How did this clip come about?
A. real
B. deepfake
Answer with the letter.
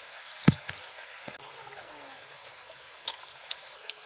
B